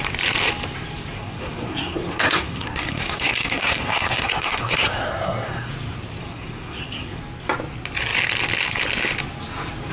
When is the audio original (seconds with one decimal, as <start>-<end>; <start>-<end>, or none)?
0.0-1.1; 5.7-6.2; 7.2-9.9